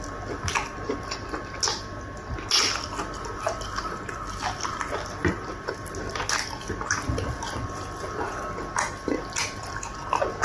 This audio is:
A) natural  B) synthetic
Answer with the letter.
A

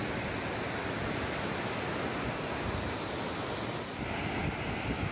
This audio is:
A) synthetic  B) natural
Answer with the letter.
B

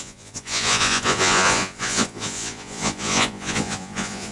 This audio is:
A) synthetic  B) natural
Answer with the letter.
A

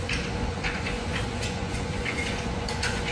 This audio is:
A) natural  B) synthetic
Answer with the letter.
B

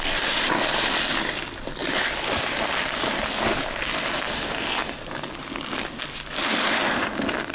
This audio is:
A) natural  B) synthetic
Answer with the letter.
A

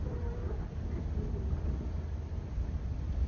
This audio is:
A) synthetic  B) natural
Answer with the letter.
B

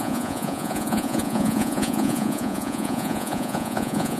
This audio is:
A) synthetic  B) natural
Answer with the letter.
A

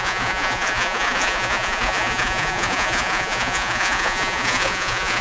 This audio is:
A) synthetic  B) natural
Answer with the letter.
A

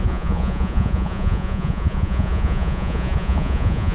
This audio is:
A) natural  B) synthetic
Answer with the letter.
B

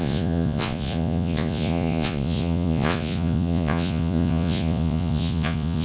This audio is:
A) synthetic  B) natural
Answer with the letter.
A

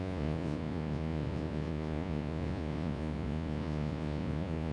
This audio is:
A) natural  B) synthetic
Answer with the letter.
B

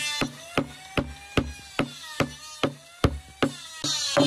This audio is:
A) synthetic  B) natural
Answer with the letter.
B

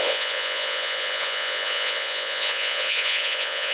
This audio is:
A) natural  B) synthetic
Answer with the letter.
B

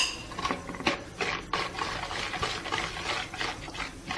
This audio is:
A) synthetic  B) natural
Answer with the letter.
B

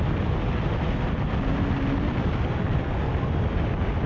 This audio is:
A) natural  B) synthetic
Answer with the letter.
A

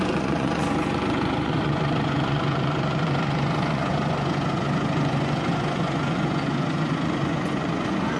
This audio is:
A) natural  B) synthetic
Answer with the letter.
B